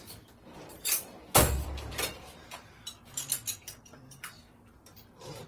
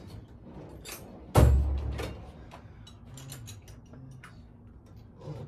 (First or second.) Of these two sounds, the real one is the second